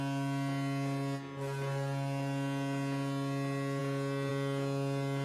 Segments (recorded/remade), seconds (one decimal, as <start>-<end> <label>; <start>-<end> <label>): 0.0-5.2 recorded